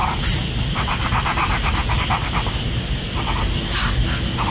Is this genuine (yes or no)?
yes